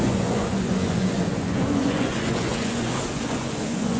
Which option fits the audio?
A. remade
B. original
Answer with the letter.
A